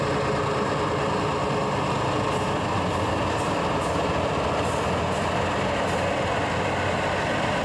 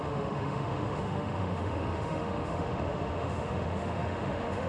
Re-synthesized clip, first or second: second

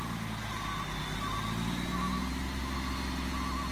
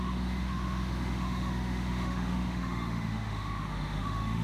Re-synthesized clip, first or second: second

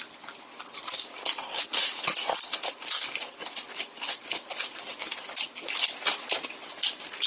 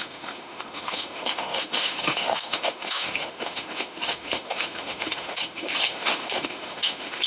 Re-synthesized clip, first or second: second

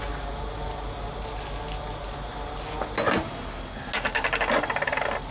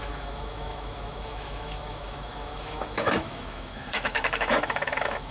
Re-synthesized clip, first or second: second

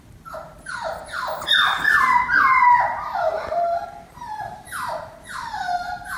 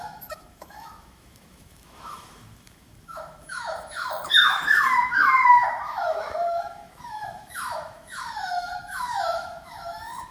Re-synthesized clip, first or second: second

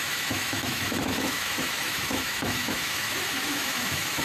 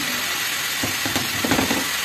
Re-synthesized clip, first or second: first